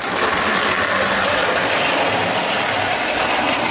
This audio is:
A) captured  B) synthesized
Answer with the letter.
A